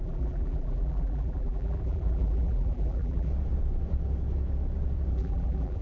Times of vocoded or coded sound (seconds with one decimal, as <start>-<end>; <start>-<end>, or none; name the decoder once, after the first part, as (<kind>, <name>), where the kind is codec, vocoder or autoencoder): 0.0-3.3 (vocoder, BigVGAN v2); 5.1-5.8